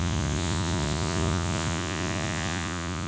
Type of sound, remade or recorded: remade